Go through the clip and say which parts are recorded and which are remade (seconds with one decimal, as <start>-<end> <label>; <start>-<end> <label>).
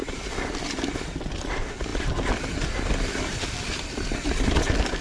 0.0-5.0 recorded